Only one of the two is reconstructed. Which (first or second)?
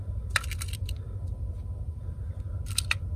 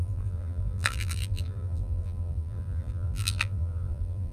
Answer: second